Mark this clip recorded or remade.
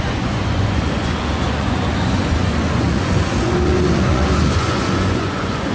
remade